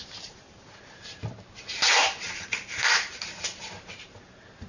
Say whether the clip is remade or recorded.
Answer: remade